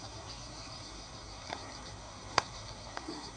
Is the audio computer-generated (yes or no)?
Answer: yes